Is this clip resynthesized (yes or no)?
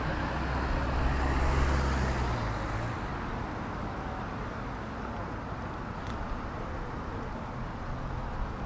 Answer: no